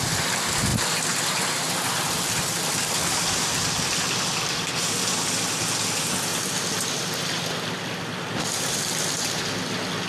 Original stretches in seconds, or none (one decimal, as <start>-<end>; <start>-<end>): 0.0-10.1

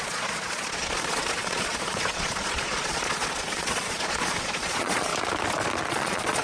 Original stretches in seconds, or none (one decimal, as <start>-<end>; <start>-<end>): 5.1-5.9

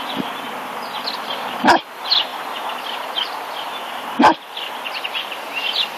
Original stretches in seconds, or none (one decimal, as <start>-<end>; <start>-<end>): 0.0-6.0

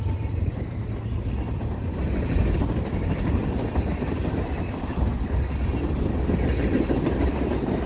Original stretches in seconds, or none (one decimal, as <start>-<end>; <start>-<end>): 0.0-7.9

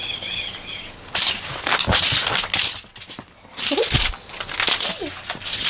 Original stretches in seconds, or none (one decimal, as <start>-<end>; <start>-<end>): 0.0-5.7